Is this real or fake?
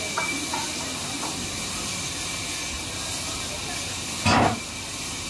real